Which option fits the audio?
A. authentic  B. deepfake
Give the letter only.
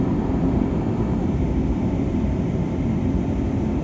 B